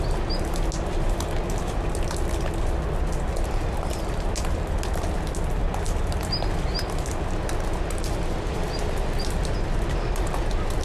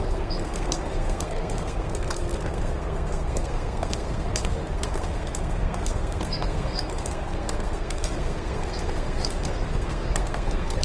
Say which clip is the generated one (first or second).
second